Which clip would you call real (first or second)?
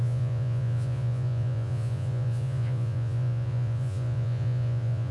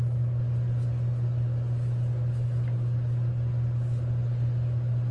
second